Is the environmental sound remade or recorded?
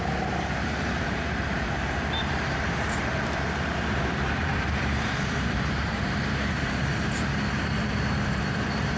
remade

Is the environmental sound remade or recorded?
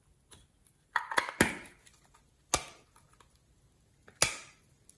recorded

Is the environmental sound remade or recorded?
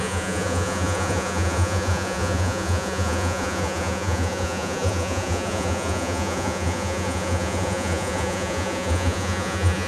remade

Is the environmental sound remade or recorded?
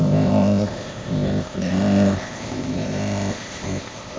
remade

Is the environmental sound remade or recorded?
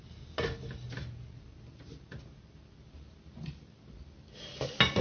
recorded